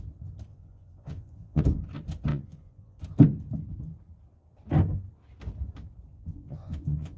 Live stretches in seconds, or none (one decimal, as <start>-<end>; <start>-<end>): 0.0-0.5; 1.6-2.3; 3.0-6.1